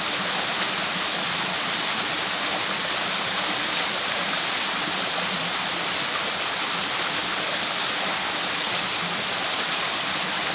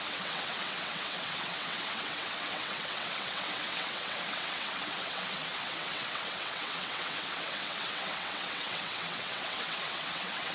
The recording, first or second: first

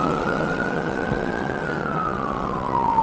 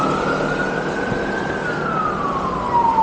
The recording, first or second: second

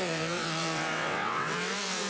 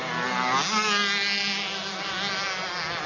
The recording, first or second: second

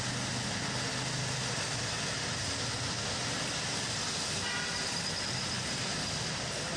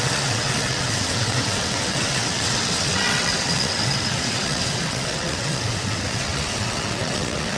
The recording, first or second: first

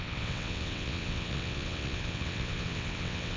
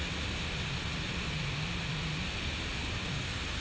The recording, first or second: second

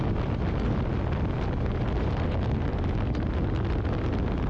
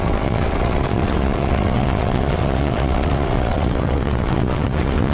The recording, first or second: first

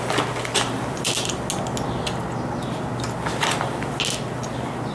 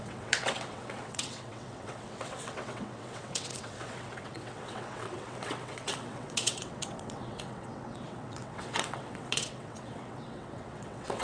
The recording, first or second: first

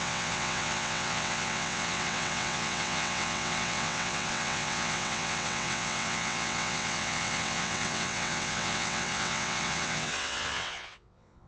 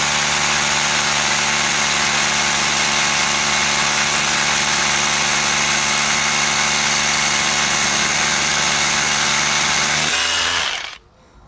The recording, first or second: second